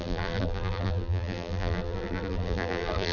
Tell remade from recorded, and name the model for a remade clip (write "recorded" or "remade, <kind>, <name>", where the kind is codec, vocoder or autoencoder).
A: remade, vocoder, BigVGAN v2